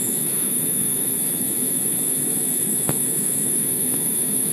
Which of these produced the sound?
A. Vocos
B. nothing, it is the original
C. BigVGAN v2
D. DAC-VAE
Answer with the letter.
D